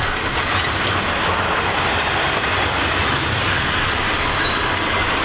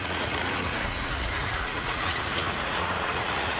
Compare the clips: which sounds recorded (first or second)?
first